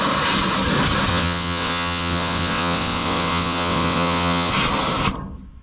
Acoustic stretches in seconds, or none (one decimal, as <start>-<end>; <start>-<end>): 0.0-1.1; 4.5-5.6